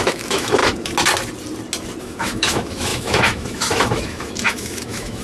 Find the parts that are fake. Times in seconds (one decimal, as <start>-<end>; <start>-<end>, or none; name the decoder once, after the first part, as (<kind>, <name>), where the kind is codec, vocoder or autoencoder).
0.0-0.6 (autoencoder, DAC-VAE); 2.0-5.2

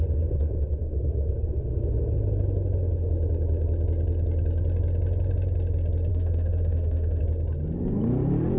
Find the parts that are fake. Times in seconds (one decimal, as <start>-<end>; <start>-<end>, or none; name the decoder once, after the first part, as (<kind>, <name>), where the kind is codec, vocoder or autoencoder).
6.1-7.2 (autoencoder, DAC-VAE)

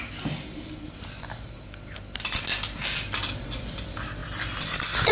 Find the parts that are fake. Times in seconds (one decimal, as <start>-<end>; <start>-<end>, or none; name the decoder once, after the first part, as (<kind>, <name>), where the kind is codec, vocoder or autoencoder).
none

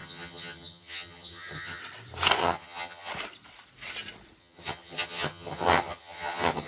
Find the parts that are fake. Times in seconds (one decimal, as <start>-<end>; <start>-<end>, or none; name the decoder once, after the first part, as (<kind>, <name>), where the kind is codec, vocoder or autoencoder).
0.0-1.8 (vocoder, HiFi-GAN); 2.4-3.1; 4.4-6.7